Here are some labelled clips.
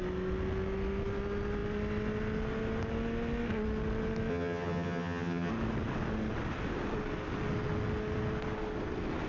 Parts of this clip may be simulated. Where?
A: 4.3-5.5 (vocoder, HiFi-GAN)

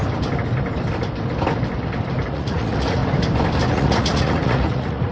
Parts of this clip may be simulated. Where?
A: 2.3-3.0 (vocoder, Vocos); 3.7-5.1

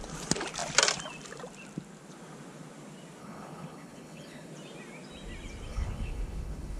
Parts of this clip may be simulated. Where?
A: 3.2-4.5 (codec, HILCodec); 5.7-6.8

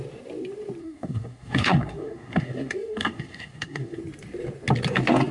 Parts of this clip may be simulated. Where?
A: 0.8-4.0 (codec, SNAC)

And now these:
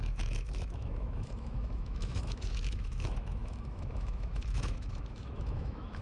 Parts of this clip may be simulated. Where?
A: 0.0-6.0 (autoencoder, DAC-VAE)

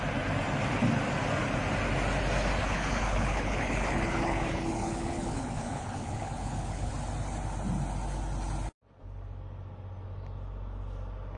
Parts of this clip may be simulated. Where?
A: 2.6-6.9 (codec, HILCodec)

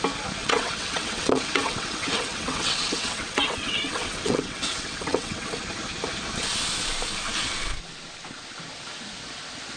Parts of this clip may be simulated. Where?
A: 0.4-5.6 (vocoder, WaveNeXt)

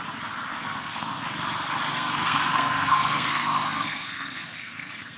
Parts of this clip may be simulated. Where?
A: 0.5-1.2 (codec, SNAC); 1.9-5.2